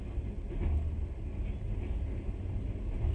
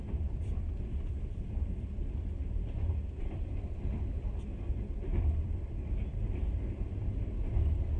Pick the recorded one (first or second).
first